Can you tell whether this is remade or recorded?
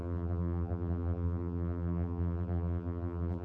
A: remade